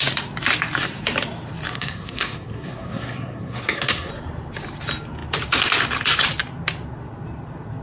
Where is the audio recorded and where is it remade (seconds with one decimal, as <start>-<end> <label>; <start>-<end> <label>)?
0.0-1.7 recorded; 1.7-4.1 remade; 4.1-7.8 recorded